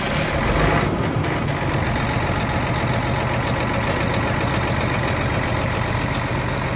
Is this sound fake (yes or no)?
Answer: no